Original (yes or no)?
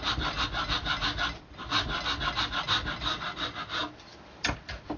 yes